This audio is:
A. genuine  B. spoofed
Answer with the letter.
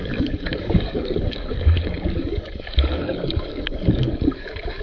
B